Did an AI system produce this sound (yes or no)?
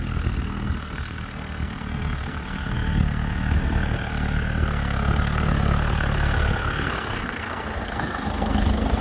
yes